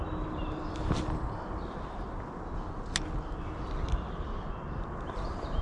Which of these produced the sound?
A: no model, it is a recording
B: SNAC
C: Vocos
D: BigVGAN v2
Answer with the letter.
A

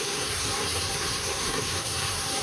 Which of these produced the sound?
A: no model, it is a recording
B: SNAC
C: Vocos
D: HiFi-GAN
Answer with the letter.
B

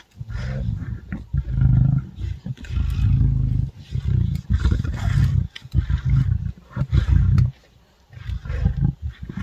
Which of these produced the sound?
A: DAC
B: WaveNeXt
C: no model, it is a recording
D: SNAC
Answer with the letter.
C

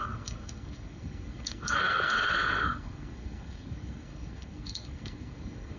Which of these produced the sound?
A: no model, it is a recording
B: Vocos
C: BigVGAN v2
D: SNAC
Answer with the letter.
D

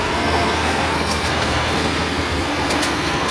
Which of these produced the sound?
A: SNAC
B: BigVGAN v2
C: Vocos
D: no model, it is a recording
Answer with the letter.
A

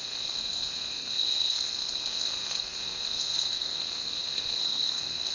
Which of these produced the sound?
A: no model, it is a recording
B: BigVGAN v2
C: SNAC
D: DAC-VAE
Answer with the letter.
C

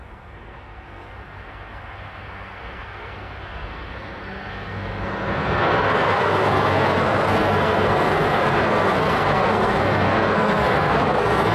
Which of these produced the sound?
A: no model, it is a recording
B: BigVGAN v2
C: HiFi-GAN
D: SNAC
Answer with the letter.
D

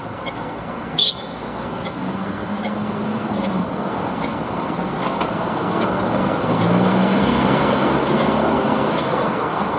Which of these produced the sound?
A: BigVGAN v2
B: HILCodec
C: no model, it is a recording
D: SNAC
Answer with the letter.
D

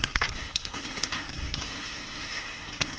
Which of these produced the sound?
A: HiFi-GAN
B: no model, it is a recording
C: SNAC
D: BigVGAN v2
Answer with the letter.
C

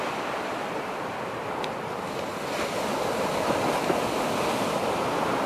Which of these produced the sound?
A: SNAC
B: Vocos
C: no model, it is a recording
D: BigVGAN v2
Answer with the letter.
C